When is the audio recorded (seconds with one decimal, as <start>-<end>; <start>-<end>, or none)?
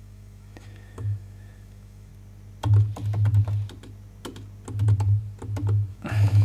2.1-5.9